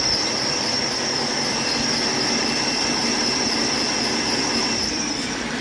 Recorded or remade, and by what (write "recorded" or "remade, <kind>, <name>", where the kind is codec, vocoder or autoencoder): remade, vocoder, BigVGAN v2